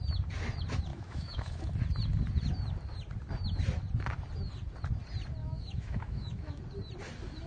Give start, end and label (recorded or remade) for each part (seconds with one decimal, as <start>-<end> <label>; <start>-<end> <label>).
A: 0.0-0.9 recorded; 0.9-1.7 remade; 1.7-5.4 recorded; 5.4-6.6 remade; 6.6-7.5 recorded